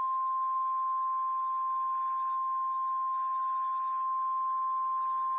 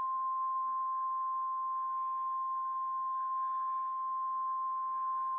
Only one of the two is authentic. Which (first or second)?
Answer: first